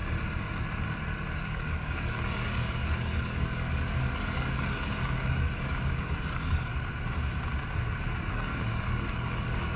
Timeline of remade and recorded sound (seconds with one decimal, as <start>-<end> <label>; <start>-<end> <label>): 0.0-1.3 recorded; 1.3-6.7 remade; 6.7-8.3 recorded; 8.3-9.8 remade